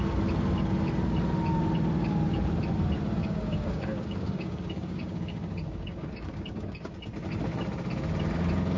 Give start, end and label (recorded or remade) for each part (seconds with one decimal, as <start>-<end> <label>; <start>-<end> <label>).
0.0-3.2 recorded; 3.2-6.9 remade; 6.9-8.8 recorded